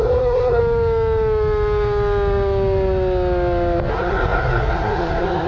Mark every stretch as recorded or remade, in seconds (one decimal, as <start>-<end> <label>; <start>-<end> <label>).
0.0-0.6 remade; 0.6-3.9 recorded; 3.9-5.5 remade

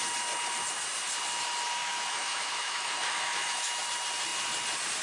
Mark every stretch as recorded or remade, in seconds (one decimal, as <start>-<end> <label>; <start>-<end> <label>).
0.0-1.8 recorded; 1.8-3.8 remade; 3.8-5.0 recorded